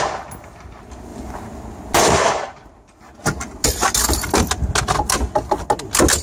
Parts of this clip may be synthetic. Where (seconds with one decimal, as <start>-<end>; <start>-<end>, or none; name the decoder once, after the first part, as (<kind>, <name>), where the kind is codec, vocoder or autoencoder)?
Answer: none